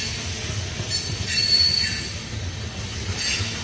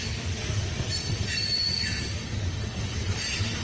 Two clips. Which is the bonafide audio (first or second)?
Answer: first